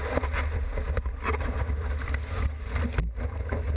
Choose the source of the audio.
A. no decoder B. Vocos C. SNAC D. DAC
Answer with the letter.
A